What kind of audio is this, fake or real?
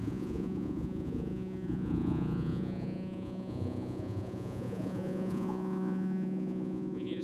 fake